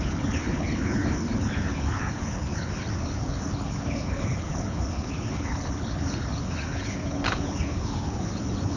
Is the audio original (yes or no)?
no